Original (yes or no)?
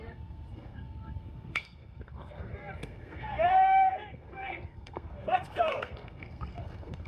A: no